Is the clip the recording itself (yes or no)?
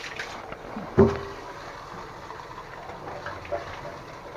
yes